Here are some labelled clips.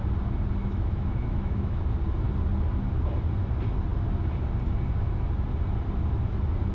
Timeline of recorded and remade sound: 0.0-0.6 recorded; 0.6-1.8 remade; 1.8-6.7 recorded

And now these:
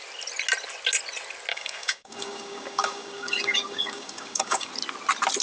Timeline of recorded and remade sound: 0.0-1.5 recorded; 1.5-4.7 remade; 4.7-5.4 recorded

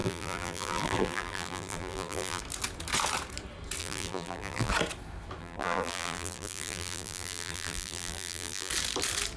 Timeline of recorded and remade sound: 0.0-2.4 remade; 2.4-3.8 recorded; 3.8-4.7 remade; 4.7-5.4 recorded; 5.4-8.7 remade; 8.7-9.4 recorded

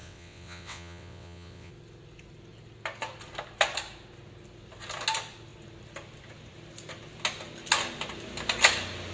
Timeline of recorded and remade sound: 0.0-1.7 remade; 1.7-9.1 recorded

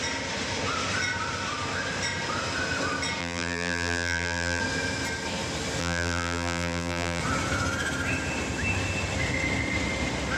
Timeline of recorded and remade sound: 0.0-3.2 recorded; 3.2-4.6 remade; 4.6-5.8 recorded; 5.8-7.2 remade; 7.2-10.4 recorded

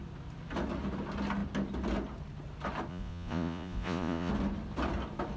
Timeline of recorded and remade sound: 0.0-2.9 recorded; 2.9-4.3 remade; 4.3-5.4 recorded